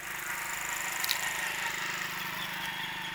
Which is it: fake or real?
real